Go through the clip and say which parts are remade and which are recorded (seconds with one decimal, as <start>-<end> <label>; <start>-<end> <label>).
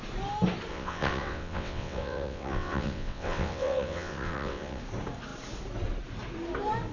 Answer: 0.0-0.7 recorded; 0.7-4.8 remade; 4.8-6.9 recorded